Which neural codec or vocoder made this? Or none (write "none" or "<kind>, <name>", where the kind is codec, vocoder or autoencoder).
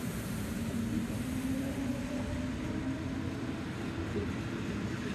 none